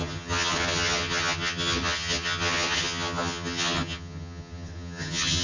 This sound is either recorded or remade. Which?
remade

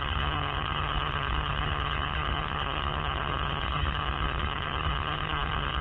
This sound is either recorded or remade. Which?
remade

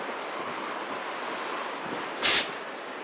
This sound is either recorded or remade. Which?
recorded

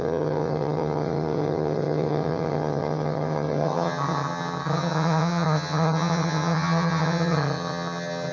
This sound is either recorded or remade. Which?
remade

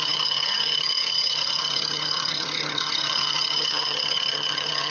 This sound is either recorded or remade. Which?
remade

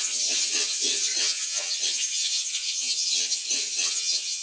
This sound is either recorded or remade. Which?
remade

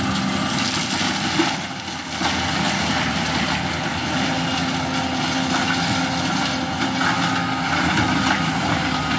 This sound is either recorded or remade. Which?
recorded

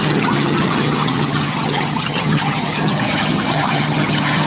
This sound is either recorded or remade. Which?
remade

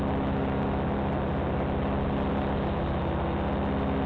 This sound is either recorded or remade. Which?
recorded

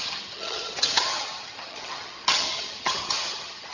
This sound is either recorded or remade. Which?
remade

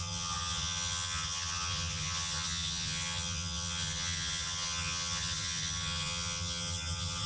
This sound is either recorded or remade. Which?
remade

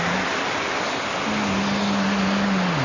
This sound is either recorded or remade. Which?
recorded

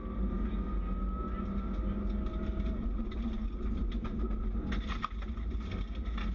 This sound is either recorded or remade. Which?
recorded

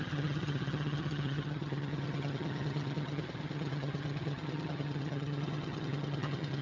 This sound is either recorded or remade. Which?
remade